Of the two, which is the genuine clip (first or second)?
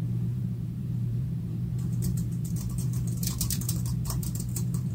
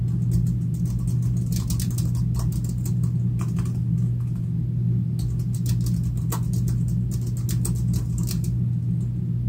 second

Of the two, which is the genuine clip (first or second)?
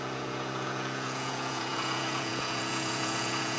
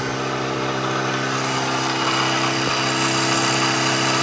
second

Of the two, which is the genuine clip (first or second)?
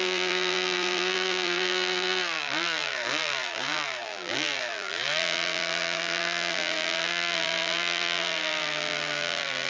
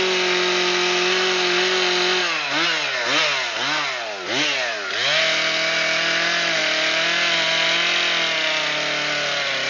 second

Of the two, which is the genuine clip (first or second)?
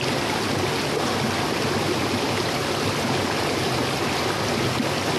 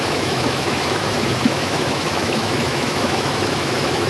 first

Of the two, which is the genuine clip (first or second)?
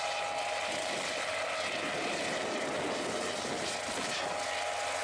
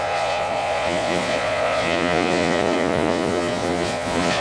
first